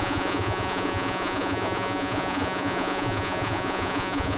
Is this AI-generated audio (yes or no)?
yes